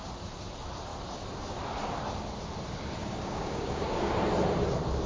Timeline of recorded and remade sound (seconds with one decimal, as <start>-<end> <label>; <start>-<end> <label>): 0.0-3.0 recorded; 3.0-4.2 remade; 4.2-5.1 recorded